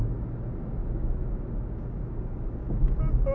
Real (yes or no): yes